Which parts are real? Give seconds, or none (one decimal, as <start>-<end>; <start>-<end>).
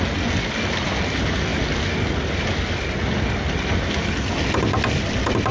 0.0-5.5